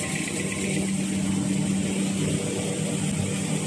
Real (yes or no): yes